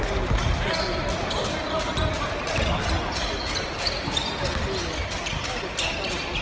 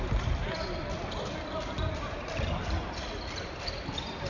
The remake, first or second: second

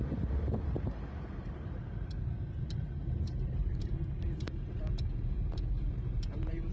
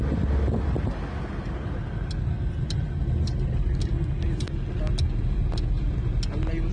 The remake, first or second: first